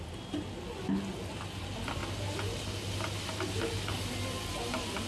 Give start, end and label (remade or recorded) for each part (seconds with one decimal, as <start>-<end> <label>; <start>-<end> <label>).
0.0-5.1 recorded